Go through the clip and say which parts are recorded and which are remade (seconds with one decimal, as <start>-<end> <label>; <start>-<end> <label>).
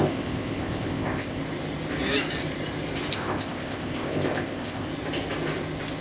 0.0-1.4 remade; 1.4-3.1 recorded; 3.1-4.9 remade; 4.9-6.0 recorded